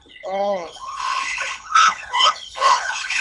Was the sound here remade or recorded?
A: remade